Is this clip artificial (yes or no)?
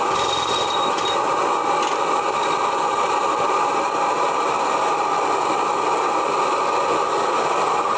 no